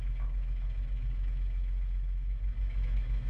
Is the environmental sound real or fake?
fake